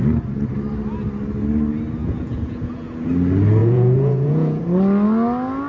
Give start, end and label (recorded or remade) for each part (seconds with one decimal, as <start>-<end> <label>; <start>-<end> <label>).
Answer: 0.0-2.0 recorded; 2.0-3.1 remade; 3.1-3.6 recorded; 3.6-4.6 remade; 4.6-5.7 recorded